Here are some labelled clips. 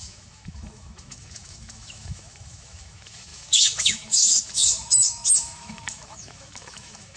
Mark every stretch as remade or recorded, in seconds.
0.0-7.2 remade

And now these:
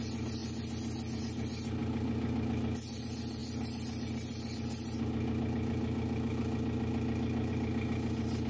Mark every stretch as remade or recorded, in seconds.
0.0-8.5 recorded

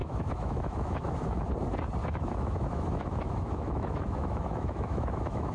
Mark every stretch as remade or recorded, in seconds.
0.0-1.5 remade; 1.5-2.0 recorded; 2.0-5.5 remade

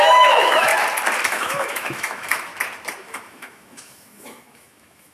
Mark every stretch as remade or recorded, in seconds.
0.0-0.7 remade; 0.7-1.3 recorded; 1.3-2.5 remade; 2.5-3.0 recorded; 3.0-5.1 remade

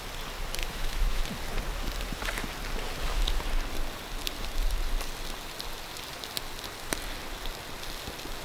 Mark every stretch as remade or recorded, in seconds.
0.0-0.6 recorded; 0.6-1.2 remade; 1.2-8.4 recorded

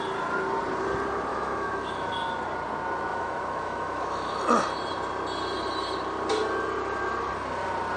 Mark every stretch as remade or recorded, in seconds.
0.0-1.3 recorded; 1.3-2.1 remade; 2.1-3.1 recorded; 3.1-4.4 remade; 4.4-8.0 recorded

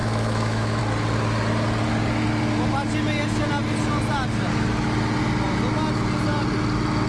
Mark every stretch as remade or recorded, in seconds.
0.0-0.8 remade; 0.8-7.1 recorded

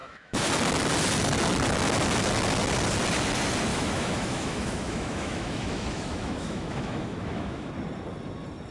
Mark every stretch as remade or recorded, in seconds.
0.0-0.5 remade; 0.5-3.7 recorded; 3.7-7.7 remade; 7.7-8.7 recorded